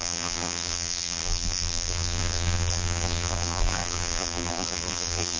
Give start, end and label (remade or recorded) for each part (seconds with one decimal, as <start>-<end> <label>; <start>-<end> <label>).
0.0-5.4 remade